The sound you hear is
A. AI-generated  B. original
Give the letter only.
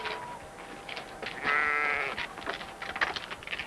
B